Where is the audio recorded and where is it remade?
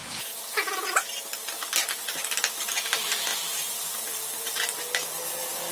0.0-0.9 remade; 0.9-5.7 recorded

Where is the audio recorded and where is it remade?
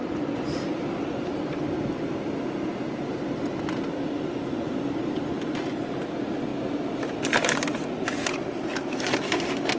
0.0-9.8 recorded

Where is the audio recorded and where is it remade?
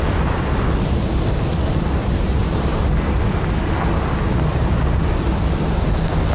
0.0-6.3 recorded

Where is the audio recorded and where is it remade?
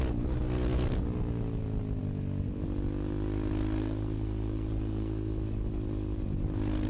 0.0-3.8 recorded; 3.8-5.3 remade; 5.3-6.9 recorded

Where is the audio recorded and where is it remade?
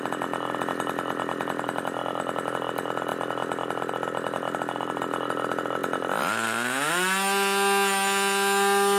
0.0-9.0 recorded